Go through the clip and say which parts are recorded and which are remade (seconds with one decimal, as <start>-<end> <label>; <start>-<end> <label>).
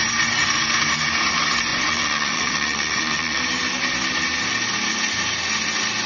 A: 0.0-1.7 recorded; 1.7-3.4 remade; 3.4-6.1 recorded